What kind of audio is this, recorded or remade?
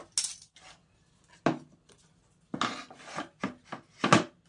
recorded